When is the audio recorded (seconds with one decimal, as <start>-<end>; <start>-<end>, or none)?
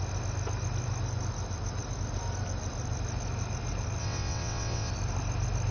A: 0.0-4.0; 4.9-5.7